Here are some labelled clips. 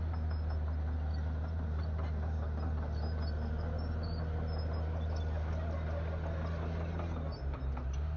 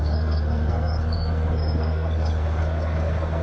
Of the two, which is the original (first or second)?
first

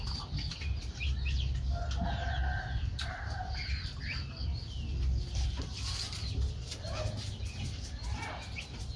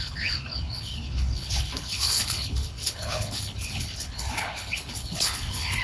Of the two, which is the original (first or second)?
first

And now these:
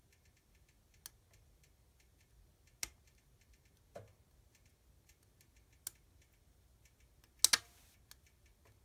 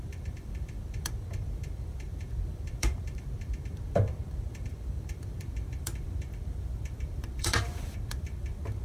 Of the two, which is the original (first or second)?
first